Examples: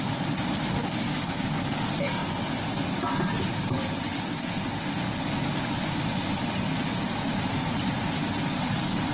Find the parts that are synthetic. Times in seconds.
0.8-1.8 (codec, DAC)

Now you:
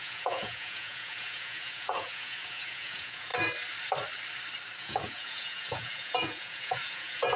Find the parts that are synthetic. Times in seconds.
0.0-3.3 (vocoder, Vocos); 4.8-7.4

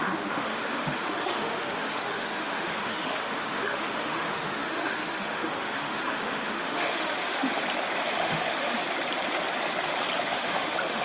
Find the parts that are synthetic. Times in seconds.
0.0-7.5 (autoencoder, DAC-VAE); 8.1-8.8; 10.2-11.0

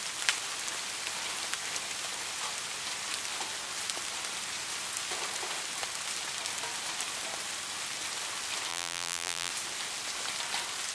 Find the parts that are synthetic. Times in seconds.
8.7-9.5 (vocoder, BigVGAN v2)